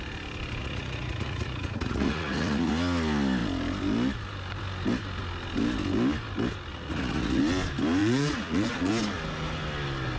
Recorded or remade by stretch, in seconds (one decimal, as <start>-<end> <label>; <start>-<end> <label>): 0.0-0.6 recorded; 0.6-2.7 remade; 2.7-6.7 recorded; 6.7-7.4 remade; 7.4-8.0 recorded; 8.0-8.9 remade; 8.9-10.2 recorded

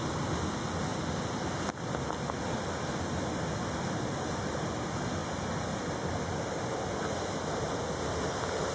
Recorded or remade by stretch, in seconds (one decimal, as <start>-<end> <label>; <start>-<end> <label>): 0.0-8.7 recorded